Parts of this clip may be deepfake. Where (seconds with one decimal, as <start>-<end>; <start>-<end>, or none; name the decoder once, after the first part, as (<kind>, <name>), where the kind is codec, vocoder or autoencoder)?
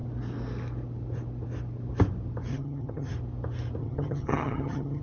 2.5-3.1 (vocoder, HiFi-GAN); 3.8-5.0